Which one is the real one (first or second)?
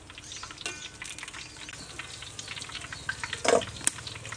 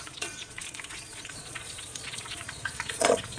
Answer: first